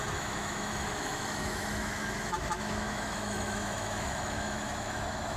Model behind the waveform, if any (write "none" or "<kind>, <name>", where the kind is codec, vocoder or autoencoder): autoencoder, DAC-VAE